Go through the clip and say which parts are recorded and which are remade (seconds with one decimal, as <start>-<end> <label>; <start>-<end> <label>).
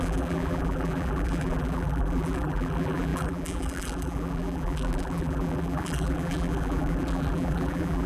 0.0-8.1 remade